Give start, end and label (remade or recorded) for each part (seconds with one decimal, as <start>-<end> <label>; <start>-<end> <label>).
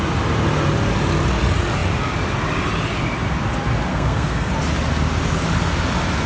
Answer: 0.0-3.9 recorded; 3.9-4.5 remade; 4.5-6.3 recorded